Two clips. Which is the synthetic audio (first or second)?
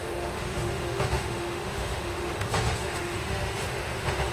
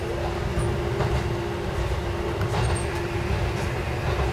first